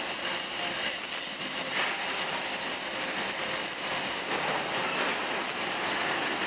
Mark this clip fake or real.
real